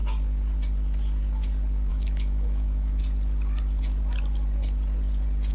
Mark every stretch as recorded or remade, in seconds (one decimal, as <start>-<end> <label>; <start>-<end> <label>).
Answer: 0.0-1.9 recorded; 1.9-3.0 remade; 3.0-5.5 recorded